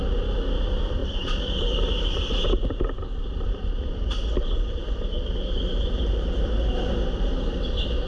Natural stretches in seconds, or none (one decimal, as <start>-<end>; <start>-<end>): 0.0-1.0; 2.3-3.2; 6.7-8.1